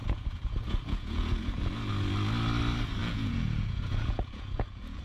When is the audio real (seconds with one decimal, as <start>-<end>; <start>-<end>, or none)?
1.9-3.0